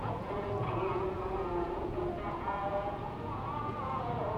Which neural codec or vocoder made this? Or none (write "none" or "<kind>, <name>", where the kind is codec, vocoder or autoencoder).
vocoder, Vocos